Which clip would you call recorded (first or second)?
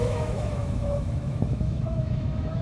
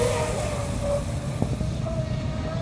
second